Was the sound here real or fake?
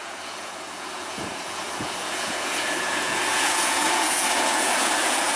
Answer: fake